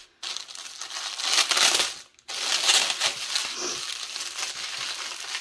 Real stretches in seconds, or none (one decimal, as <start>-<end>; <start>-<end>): 0.0-5.4